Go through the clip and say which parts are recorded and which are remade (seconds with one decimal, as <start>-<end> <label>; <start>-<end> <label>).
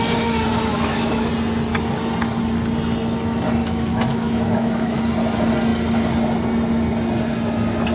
0.0-0.7 recorded; 0.7-1.3 remade; 1.3-3.6 recorded; 3.6-5.0 remade; 5.0-7.9 recorded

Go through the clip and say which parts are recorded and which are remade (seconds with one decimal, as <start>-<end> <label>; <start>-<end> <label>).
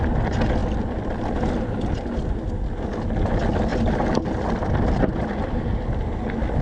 0.0-6.6 recorded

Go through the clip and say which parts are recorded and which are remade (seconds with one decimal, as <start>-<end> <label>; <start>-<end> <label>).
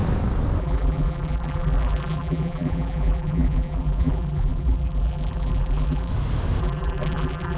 0.0-0.6 recorded; 0.6-6.1 remade; 6.1-6.6 recorded; 6.6-7.6 remade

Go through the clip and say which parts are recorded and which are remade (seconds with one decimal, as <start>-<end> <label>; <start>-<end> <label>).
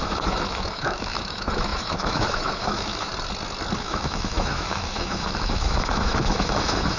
0.0-3.1 remade; 3.1-3.8 recorded; 3.8-7.0 remade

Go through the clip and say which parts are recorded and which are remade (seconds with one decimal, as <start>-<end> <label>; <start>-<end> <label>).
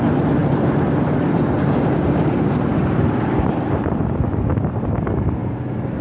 0.0-0.4 recorded; 0.4-4.0 remade; 4.0-5.4 recorded; 5.4-6.0 remade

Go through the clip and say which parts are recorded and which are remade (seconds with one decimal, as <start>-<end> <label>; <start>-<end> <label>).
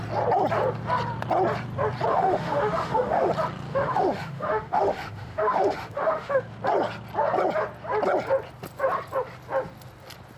0.0-2.1 recorded; 2.1-3.3 remade; 3.3-3.7 recorded; 3.7-6.4 remade; 6.4-10.4 recorded